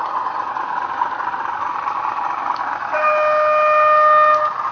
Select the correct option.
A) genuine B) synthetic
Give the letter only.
A